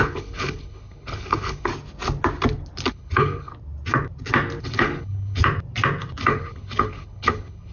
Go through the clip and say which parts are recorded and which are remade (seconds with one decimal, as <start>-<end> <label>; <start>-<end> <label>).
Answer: 0.0-1.7 remade; 1.7-2.9 recorded; 2.9-3.5 remade; 3.5-4.6 recorded; 4.6-5.4 remade; 5.4-6.2 recorded; 6.2-7.7 remade